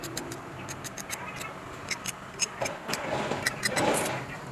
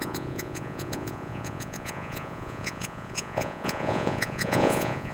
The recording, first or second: first